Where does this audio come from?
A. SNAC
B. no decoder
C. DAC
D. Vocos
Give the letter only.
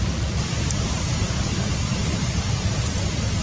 B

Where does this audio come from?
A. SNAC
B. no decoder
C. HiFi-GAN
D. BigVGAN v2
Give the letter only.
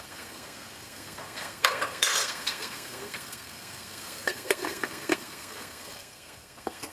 A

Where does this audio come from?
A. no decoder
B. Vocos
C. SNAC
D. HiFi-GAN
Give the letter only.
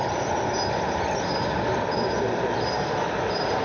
A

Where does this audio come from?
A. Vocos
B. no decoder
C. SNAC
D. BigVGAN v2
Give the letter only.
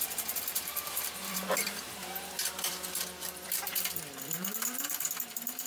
D